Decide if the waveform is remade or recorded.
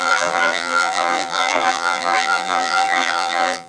remade